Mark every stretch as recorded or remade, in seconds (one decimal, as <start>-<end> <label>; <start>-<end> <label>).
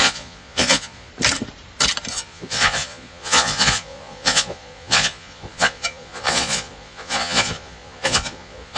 0.0-1.1 remade; 1.1-2.1 recorded; 2.1-8.8 remade